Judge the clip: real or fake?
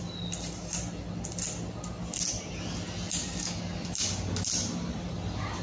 real